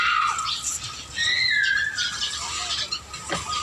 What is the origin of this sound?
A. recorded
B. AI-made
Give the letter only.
A